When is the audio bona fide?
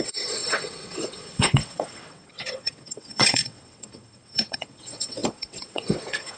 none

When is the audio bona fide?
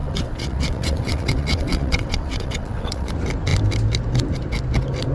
3.1-5.1